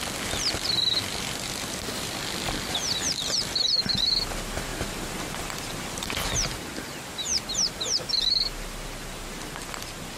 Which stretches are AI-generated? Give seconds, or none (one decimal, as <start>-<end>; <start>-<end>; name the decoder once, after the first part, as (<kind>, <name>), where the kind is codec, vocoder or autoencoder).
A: none